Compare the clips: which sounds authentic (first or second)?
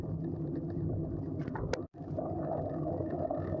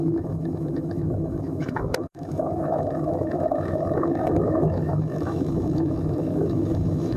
first